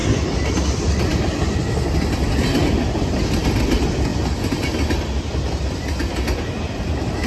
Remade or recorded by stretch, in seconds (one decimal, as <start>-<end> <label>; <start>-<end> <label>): 0.0-7.3 recorded